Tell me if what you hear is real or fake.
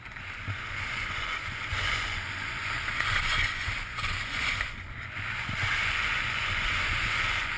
fake